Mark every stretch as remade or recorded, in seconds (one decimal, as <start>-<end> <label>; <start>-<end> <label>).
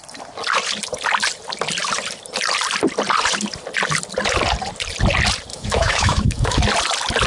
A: 0.0-5.5 recorded; 5.5-6.6 remade; 6.6-7.3 recorded